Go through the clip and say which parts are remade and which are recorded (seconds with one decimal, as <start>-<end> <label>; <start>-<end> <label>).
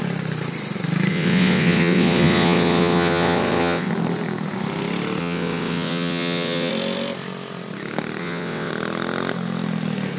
0.0-1.1 recorded; 1.1-3.9 remade; 3.9-5.2 recorded; 5.2-6.7 remade; 6.7-8.2 recorded; 8.2-8.7 remade; 8.7-10.2 recorded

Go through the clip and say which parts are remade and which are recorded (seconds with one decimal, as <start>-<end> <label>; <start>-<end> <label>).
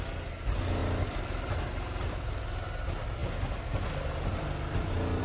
0.0-5.2 recorded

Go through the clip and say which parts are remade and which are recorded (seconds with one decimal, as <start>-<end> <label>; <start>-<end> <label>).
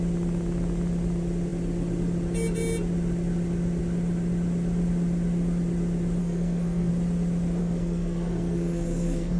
0.0-6.2 recorded; 6.2-6.9 remade; 6.9-7.6 recorded; 7.6-9.4 remade